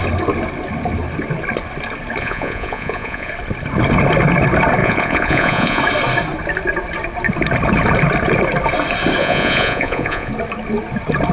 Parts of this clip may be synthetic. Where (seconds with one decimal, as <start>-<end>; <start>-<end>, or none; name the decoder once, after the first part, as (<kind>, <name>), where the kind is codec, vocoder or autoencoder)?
2.2-3.3 (vocoder, Vocos); 4.8-5.8; 9.2-10.3